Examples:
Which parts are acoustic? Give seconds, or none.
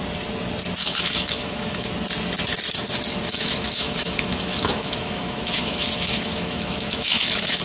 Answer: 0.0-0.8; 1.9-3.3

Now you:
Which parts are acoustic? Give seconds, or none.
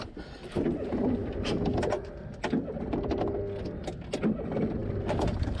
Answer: 0.0-5.6